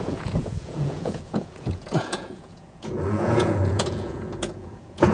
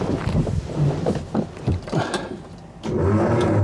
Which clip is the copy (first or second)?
first